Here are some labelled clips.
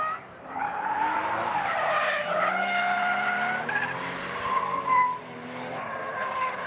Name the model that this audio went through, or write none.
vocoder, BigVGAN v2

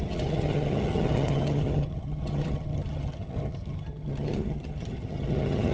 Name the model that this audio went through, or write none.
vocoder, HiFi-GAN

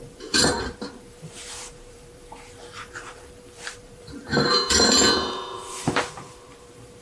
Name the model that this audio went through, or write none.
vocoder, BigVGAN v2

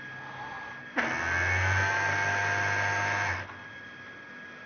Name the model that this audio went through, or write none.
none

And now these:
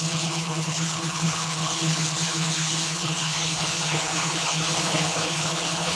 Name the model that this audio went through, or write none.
codec, HILCodec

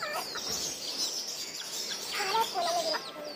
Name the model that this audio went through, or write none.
none